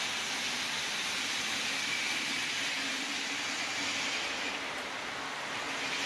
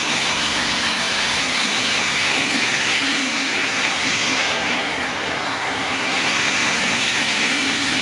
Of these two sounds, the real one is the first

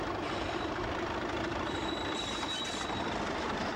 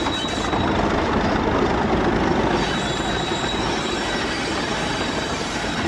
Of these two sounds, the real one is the second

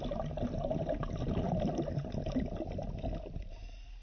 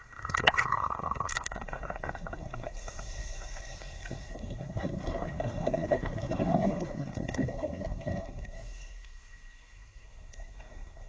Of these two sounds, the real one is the first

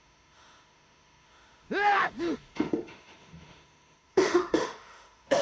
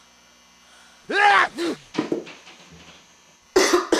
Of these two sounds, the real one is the second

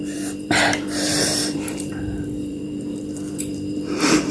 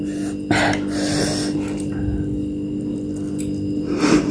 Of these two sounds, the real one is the second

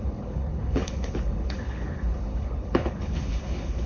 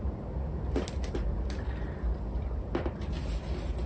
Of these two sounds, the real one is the second